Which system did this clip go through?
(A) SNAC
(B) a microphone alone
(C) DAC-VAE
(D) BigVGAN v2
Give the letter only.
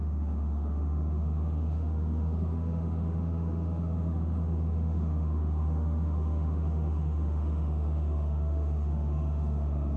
C